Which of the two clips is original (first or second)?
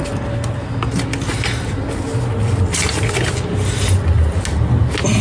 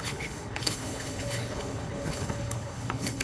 first